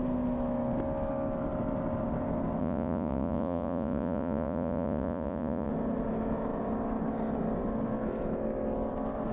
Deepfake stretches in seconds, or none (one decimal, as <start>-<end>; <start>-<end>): 2.6-5.7